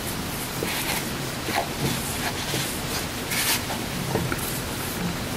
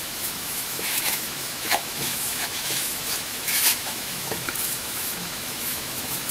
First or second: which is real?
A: first